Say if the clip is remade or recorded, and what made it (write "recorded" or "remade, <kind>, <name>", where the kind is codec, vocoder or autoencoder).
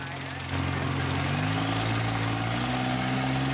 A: recorded